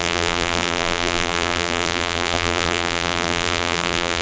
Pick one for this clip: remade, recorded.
remade